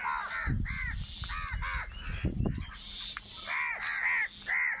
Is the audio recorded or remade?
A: recorded